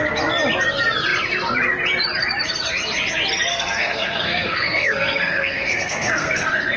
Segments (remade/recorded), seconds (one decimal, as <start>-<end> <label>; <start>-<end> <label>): 0.0-3.5 recorded; 3.5-6.8 remade